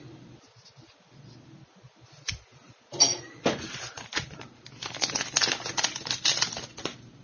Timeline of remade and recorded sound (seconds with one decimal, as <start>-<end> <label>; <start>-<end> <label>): 0.0-7.2 recorded